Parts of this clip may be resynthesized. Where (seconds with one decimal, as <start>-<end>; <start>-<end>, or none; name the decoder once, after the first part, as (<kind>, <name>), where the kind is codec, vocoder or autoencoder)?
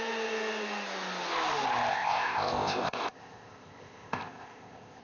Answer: 1.9-5.0 (codec, ZipCodec)